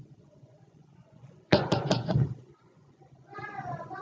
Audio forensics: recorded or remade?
remade